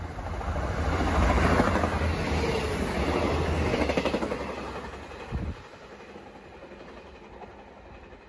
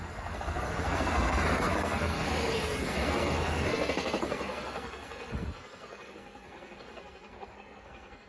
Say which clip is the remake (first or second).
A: second